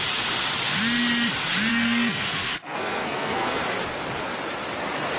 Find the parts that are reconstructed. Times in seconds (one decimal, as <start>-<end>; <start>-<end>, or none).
1.7-3.6